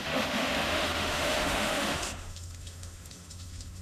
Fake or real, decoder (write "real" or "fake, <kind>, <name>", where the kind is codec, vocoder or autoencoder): fake, autoencoder, DAC-VAE